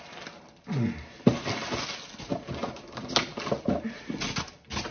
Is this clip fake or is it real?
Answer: real